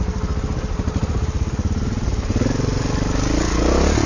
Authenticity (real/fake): real